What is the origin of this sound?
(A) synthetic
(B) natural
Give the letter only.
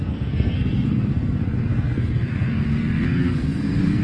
A